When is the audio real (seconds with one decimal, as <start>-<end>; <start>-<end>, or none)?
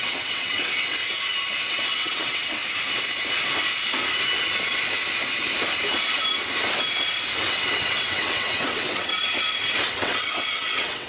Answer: 1.0-1.6; 2.6-7.4; 9.1-9.9